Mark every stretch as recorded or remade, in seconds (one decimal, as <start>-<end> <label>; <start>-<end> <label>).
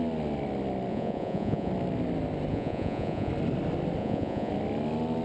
0.0-0.9 recorded; 0.9-1.7 remade; 1.7-2.5 recorded; 2.5-3.3 remade; 3.3-4.0 recorded; 4.0-4.5 remade; 4.5-5.2 recorded